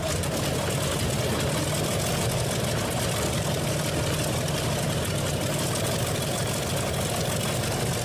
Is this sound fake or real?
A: real